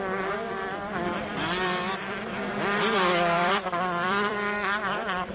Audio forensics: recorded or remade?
remade